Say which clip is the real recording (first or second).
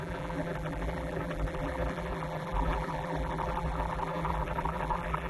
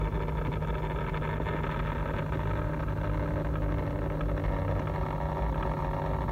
second